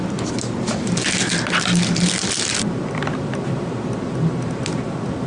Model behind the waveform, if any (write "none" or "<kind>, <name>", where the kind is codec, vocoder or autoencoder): none